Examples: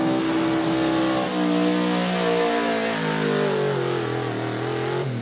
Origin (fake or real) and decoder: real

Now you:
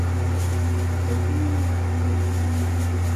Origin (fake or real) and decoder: real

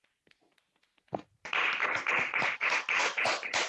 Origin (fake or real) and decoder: fake, vocoder, BigVGAN v2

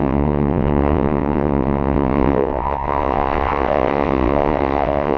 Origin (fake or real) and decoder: fake, vocoder, WaveNeXt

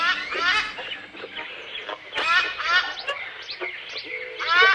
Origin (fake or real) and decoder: real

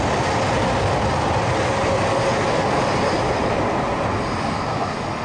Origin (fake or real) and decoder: real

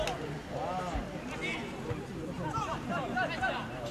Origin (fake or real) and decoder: real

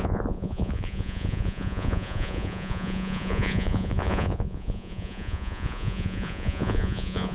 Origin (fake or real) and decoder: fake, vocoder, Vocos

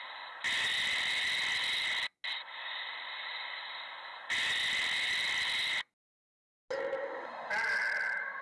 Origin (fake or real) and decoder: real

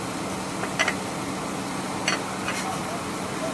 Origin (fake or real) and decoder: real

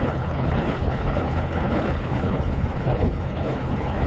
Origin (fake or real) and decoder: fake, codec, HILCodec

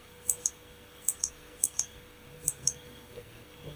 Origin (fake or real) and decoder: fake, codec, SNAC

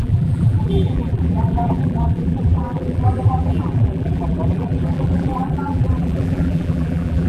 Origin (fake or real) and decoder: fake, vocoder, BigVGAN v2